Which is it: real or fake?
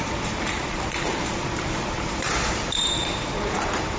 fake